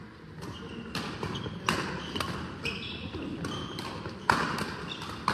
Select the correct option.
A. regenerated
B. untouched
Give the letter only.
B